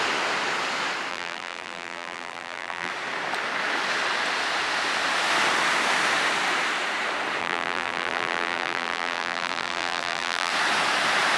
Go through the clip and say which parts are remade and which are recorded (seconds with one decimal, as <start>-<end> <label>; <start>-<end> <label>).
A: 0.0-1.1 recorded; 1.1-2.9 remade; 2.9-7.4 recorded; 7.4-10.5 remade; 10.5-11.4 recorded